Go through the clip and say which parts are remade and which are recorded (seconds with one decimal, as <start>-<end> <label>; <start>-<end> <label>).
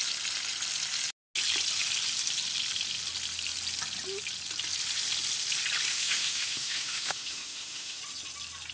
0.0-5.9 recorded; 5.9-8.0 remade; 8.0-8.7 recorded